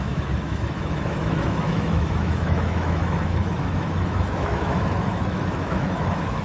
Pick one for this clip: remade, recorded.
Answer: remade